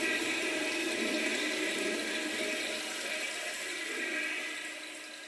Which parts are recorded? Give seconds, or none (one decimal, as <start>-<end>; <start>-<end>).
0.0-5.3